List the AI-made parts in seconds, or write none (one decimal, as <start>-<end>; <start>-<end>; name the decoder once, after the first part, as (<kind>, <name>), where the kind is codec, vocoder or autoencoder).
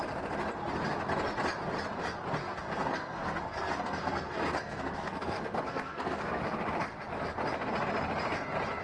2.4-6.4 (codec, SNAC)